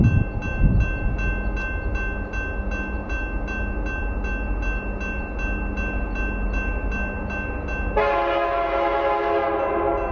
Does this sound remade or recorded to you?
recorded